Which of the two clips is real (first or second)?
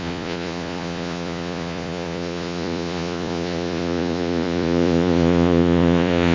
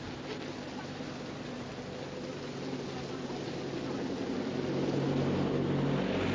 second